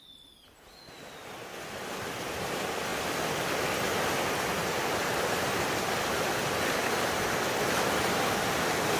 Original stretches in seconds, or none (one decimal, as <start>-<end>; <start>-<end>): 0.0-9.0